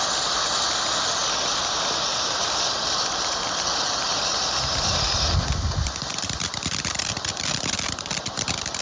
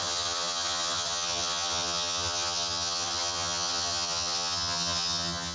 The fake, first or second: second